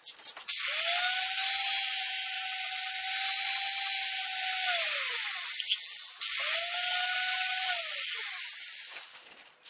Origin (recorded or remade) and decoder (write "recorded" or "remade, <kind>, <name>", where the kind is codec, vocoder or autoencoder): recorded